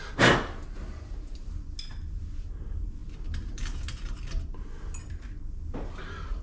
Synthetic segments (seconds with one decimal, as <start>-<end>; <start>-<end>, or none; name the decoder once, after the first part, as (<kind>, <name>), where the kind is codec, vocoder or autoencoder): none